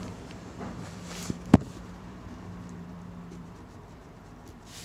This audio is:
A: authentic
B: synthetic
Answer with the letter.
B